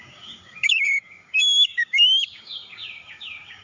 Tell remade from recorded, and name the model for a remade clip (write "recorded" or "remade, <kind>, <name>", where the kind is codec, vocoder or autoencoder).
remade, codec, DAC